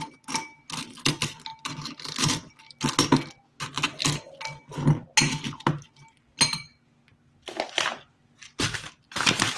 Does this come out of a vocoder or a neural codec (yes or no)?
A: no